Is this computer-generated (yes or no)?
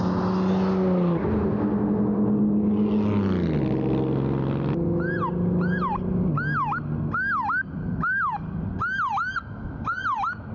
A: no